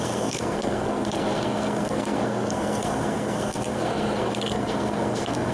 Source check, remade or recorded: remade